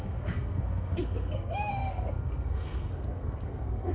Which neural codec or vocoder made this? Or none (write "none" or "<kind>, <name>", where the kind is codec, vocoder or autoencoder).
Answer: codec, SNAC